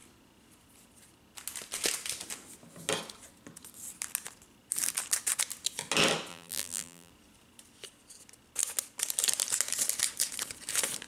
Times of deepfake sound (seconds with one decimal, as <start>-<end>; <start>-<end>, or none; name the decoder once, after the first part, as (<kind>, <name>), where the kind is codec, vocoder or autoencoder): 6.3-7.1 (vocoder, BigVGAN v2)